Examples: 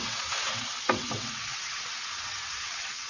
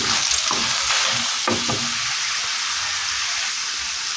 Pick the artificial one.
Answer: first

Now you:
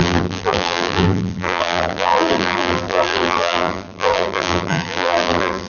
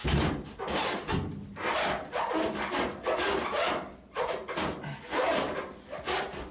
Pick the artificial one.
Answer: first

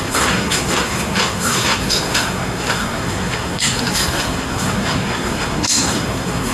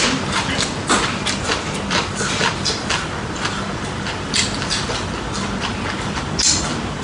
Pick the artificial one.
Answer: first